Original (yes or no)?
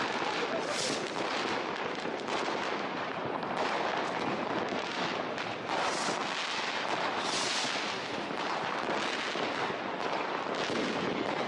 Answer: yes